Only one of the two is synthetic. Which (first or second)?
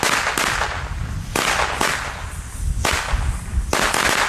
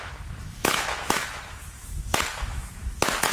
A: second